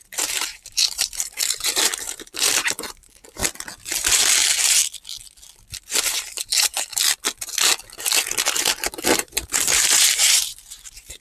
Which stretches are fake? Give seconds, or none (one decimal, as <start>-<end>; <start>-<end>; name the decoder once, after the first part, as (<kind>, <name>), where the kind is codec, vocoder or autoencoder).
0.0-3.4 (vocoder, BigVGAN v2); 5.8-6.9; 8.6-11.2